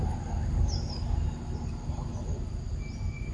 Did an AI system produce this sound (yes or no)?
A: no